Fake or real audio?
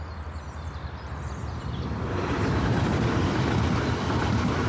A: real